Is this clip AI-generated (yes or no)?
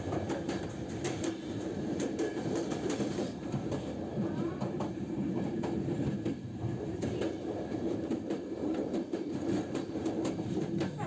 yes